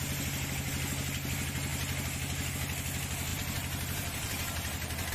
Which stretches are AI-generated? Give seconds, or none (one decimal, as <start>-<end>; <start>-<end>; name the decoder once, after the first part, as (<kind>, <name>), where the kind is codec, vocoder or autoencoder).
3.3-5.1 (vocoder, BigVGAN v2)